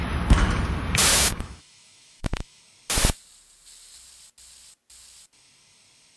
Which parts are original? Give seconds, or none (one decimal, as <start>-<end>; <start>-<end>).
0.0-1.1; 2.6-6.2